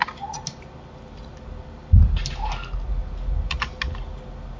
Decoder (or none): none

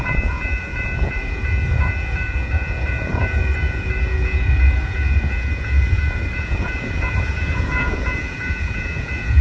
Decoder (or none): vocoder, Vocos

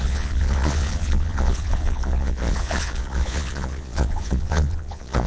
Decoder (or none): vocoder, Vocos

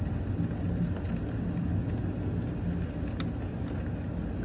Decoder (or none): none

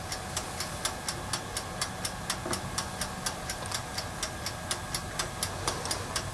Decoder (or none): none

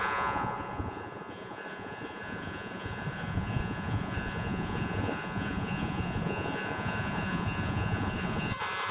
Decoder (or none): vocoder, Vocos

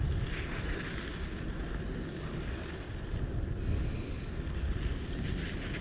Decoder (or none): none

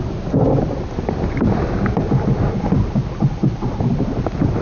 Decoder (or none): none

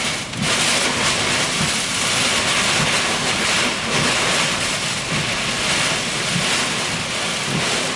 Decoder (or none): none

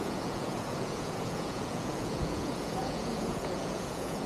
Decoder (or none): vocoder, Vocos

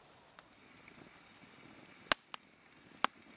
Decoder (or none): none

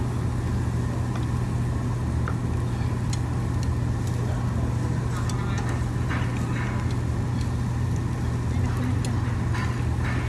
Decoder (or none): none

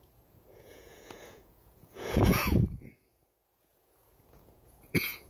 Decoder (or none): vocoder, Vocos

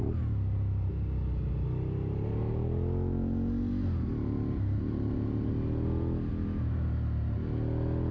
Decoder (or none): none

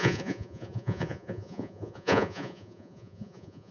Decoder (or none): vocoder, Vocos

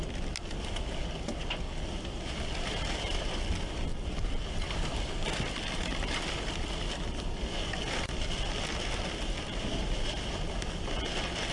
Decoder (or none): none